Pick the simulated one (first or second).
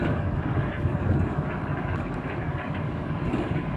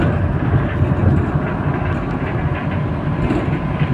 first